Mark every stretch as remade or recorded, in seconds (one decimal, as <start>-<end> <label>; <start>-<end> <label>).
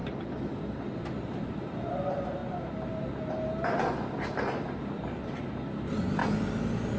0.0-7.0 recorded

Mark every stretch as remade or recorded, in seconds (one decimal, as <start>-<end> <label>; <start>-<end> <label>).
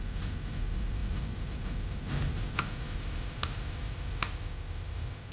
0.0-5.3 recorded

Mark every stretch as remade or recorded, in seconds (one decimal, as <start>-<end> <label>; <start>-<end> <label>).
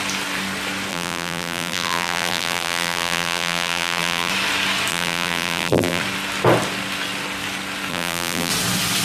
0.0-0.9 recorded; 0.9-4.3 remade; 4.3-4.9 recorded; 4.9-6.0 remade; 6.0-7.9 recorded; 7.9-8.5 remade; 8.5-9.0 recorded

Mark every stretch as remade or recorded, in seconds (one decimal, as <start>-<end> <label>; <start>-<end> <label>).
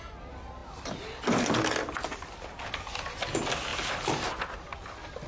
0.0-5.3 recorded